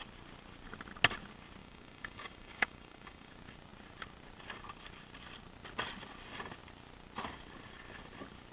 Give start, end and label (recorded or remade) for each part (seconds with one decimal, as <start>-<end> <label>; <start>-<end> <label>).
0.0-1.6 recorded; 1.6-3.3 remade; 3.3-8.5 recorded